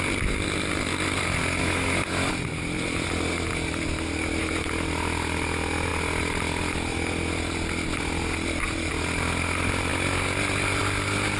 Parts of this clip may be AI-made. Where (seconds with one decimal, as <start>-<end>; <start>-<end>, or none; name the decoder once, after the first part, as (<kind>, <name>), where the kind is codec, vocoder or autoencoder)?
1.6-2.3 (autoencoder, DAC-VAE)